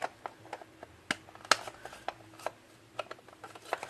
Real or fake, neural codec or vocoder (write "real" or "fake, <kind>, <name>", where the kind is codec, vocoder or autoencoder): real